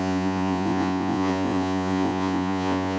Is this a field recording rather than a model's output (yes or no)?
no